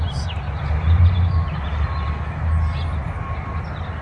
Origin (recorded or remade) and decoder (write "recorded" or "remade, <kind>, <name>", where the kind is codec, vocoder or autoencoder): recorded